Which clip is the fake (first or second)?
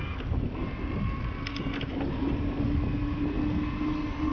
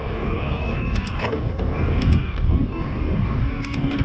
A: second